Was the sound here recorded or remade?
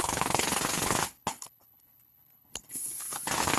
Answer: remade